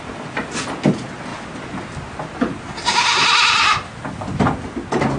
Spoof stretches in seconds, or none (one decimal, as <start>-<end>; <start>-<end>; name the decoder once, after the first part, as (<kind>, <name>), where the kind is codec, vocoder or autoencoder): none